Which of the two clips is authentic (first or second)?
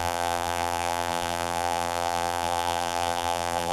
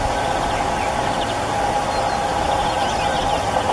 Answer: second